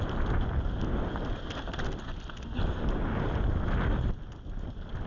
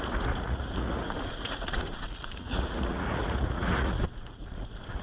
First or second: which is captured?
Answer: first